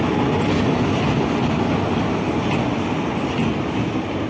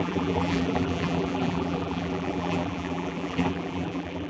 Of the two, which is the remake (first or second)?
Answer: second